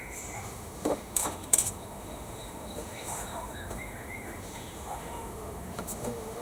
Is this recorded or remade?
remade